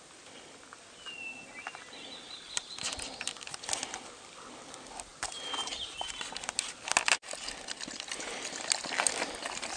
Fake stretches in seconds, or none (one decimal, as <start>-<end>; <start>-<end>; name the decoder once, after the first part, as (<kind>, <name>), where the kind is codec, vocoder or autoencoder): none